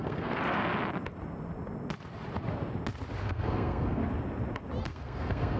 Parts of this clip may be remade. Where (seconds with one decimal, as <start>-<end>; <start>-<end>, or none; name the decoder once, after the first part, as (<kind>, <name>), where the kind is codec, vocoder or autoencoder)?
0.0-0.6 (codec, SNAC); 3.2-4.0; 4.8-5.6